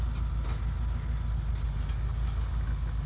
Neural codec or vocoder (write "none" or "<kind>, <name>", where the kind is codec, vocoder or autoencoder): none